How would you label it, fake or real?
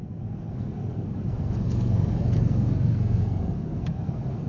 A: fake